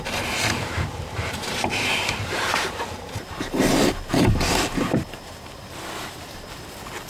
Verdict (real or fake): fake